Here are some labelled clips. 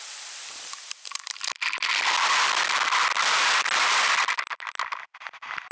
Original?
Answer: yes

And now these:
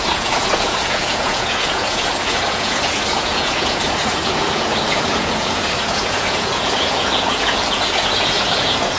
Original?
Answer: no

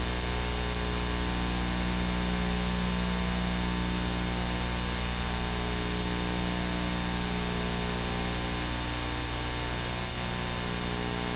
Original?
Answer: yes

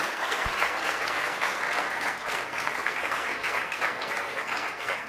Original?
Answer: no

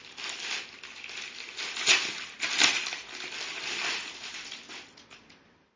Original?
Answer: yes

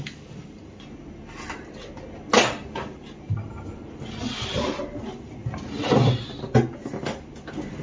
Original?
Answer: yes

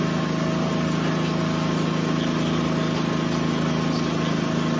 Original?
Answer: yes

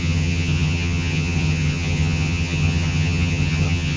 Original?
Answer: no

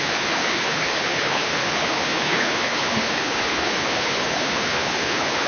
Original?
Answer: no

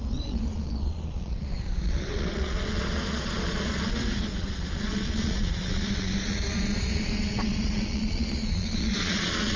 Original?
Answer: no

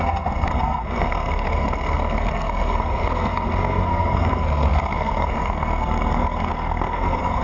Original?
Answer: no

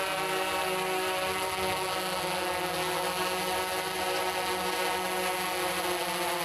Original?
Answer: yes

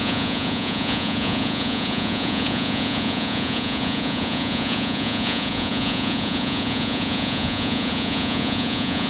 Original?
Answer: no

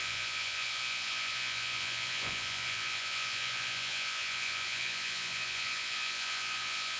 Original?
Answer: no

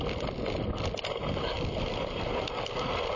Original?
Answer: yes